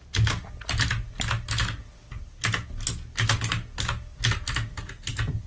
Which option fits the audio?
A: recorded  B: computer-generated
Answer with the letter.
A